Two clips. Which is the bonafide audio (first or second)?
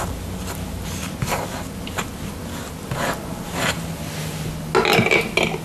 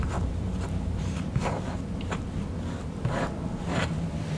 first